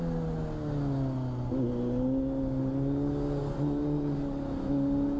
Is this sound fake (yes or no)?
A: no